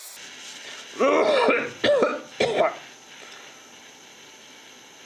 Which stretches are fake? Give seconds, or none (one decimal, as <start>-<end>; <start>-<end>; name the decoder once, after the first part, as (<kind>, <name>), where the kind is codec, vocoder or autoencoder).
none

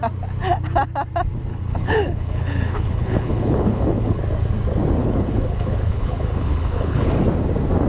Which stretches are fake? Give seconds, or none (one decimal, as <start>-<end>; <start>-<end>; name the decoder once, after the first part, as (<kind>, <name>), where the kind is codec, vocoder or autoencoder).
1.5-4.2 (codec, HILCodec); 5.0-7.1

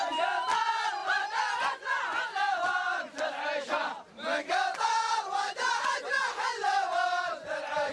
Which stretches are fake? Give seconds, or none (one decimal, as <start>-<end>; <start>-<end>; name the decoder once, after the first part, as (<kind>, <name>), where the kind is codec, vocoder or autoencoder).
1.0-2.2 (vocoder, Vocos)

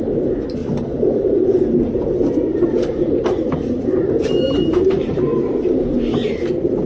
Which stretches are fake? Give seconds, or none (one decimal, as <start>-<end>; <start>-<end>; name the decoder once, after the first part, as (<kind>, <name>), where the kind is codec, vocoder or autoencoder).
0.6-2.1 (vocoder, BigVGAN v2); 2.5-6.0

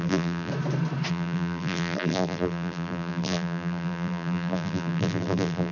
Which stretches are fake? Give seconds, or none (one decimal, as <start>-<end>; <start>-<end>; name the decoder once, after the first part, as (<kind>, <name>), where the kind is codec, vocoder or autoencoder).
0.0-0.5 (vocoder, BigVGAN v2); 1.1-5.7

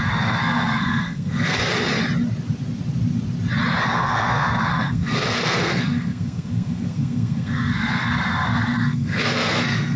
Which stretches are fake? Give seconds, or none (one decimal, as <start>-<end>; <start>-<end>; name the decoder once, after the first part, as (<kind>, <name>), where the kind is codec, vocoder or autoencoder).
0.0-1.6 (codec, SNAC); 3.8-10.0

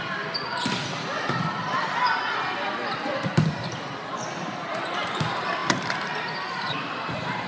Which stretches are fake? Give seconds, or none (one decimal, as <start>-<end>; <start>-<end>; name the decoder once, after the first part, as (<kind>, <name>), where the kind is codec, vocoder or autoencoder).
none

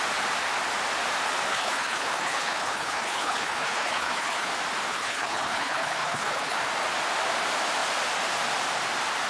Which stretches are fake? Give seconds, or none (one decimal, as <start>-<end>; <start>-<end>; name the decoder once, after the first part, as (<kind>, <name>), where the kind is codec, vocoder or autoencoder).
1.5-4.5 (codec, HILCodec); 4.9-6.6